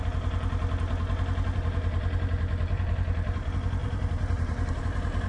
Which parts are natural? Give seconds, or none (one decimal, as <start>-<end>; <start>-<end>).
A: 0.0-3.8; 4.8-5.3